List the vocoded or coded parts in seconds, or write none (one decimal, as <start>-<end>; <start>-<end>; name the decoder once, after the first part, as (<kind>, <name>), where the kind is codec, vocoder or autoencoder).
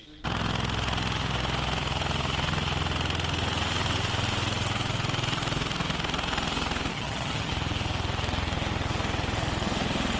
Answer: 6.9-7.5 (vocoder, HiFi-GAN)